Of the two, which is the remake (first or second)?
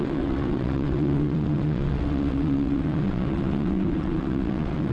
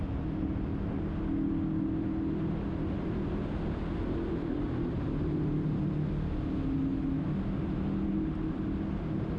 first